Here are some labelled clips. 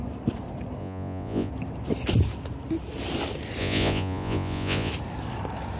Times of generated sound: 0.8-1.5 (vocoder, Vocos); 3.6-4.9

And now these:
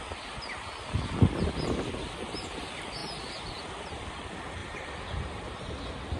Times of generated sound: 4.6-6.2 (vocoder, BigVGAN v2)

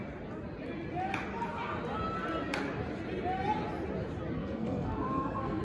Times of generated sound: 4.4-5.6 (codec, SNAC)

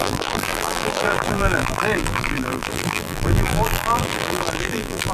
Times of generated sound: 0.0-5.1 (vocoder, BigVGAN v2)